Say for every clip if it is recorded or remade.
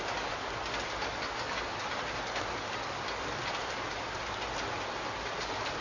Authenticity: recorded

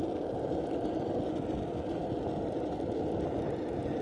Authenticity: recorded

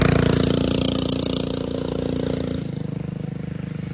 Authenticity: recorded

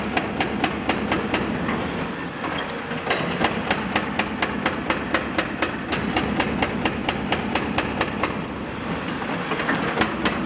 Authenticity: recorded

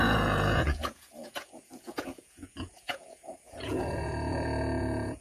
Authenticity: remade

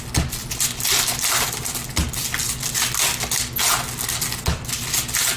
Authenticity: recorded